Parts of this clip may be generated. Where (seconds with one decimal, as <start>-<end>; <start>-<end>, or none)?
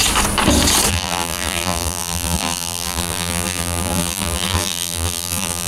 0.9-5.7